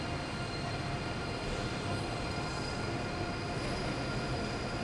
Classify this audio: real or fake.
real